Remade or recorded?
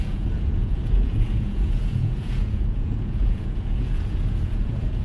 remade